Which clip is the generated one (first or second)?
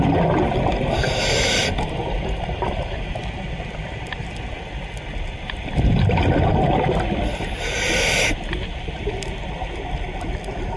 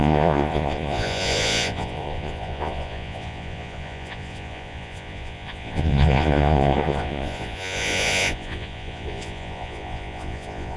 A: second